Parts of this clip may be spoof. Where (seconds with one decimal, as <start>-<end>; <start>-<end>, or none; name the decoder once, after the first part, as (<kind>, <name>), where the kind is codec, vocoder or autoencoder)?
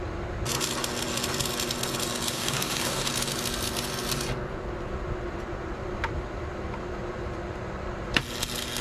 2.3-3.1 (codec, DAC)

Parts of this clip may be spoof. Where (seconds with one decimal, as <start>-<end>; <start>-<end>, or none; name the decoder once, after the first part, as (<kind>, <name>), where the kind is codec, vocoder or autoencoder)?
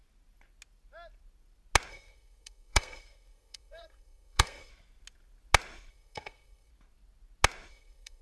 1.9-4.7 (codec, SNAC); 5.9-6.7; 7.7-8.2